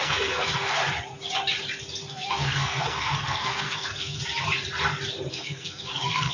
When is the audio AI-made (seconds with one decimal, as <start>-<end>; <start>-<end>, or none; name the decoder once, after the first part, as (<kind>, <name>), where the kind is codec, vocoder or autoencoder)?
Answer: 0.0-0.8 (codec, SNAC); 2.1-4.2; 5.3-6.3